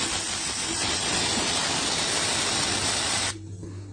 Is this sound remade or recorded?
recorded